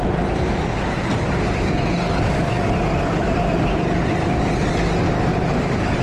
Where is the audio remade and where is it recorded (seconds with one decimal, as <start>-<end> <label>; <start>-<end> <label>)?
0.0-1.1 recorded; 1.1-1.8 remade; 1.8-2.4 recorded; 2.4-4.7 remade; 4.7-5.3 recorded; 5.3-6.0 remade